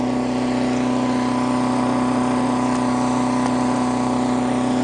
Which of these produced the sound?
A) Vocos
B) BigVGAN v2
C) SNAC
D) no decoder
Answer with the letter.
D